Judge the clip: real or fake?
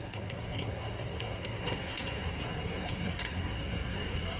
fake